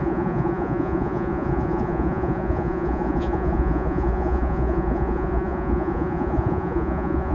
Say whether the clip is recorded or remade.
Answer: remade